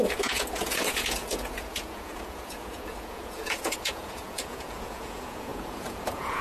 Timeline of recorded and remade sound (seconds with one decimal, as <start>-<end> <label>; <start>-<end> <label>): 0.0-6.4 remade

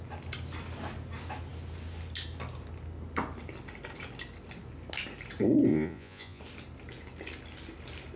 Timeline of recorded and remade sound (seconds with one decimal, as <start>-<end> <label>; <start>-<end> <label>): 0.0-5.7 recorded; 5.7-6.4 remade; 6.4-8.2 recorded

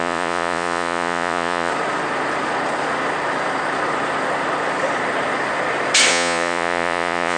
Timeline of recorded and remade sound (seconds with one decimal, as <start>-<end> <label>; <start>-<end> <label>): 0.0-1.7 remade; 1.7-6.1 recorded; 6.1-7.4 remade

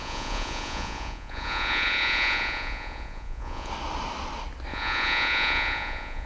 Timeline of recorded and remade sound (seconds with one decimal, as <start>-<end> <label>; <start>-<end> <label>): 0.0-3.7 remade; 3.7-4.7 recorded; 4.7-6.3 remade

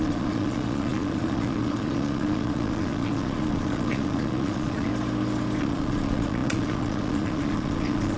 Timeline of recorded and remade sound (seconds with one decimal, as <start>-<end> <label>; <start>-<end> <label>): 0.0-4.9 remade; 4.9-5.6 recorded; 5.6-8.2 remade

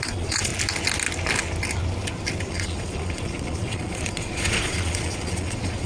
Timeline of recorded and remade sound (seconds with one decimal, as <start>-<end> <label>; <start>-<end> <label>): 0.0-0.5 remade; 0.5-2.5 recorded; 2.5-5.9 remade

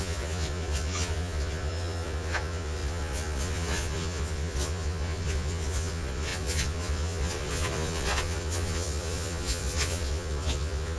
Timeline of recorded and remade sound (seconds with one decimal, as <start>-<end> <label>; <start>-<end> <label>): 0.0-11.0 remade